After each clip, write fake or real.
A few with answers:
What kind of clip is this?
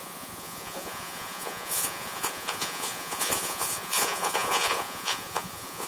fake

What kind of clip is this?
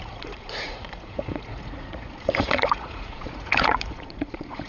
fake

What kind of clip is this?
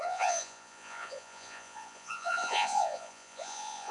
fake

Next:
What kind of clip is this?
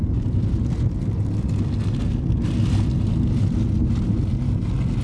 real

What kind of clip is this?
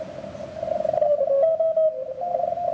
real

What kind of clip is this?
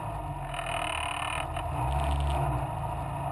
real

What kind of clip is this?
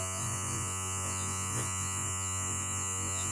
fake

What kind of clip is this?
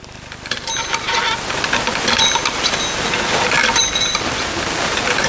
real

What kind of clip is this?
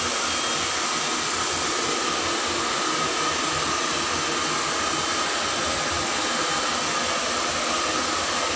real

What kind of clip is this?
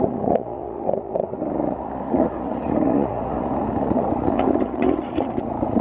fake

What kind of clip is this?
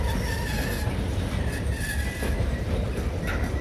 real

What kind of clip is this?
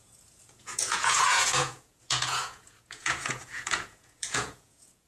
fake